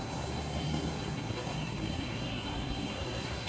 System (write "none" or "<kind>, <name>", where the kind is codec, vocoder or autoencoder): codec, SNAC